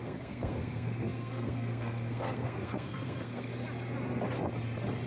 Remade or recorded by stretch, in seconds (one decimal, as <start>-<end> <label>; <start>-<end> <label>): 0.0-3.5 remade; 3.5-5.1 recorded

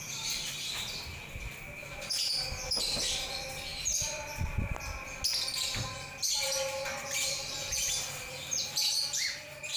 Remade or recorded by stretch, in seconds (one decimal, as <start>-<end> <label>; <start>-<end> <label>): 0.0-1.8 recorded; 1.8-3.3 remade; 3.3-9.8 recorded

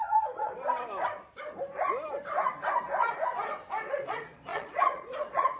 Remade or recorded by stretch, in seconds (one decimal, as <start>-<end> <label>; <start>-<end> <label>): 0.0-0.5 remade; 0.5-3.9 recorded; 3.9-5.6 remade

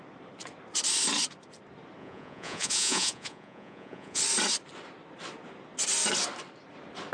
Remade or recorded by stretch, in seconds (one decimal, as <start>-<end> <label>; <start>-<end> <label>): 0.0-2.0 recorded; 2.0-4.2 remade; 4.2-7.1 recorded

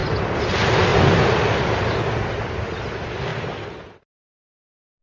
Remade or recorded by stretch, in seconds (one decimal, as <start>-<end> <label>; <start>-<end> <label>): 0.0-5.0 recorded